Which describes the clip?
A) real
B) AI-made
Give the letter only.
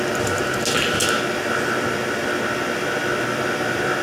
A